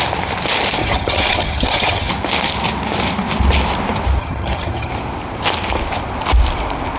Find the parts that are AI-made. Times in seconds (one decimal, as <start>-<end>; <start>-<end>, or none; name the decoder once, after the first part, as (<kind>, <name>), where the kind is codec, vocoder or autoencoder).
0.8-2.1 (vocoder, HiFi-GAN); 4.2-4.9